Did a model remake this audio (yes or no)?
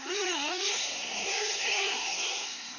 yes